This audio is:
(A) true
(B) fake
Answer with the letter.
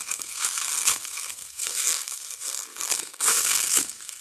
B